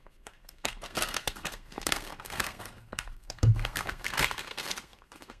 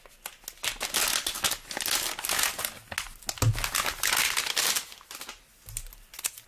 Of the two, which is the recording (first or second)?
second